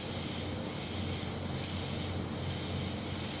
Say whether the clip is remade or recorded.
recorded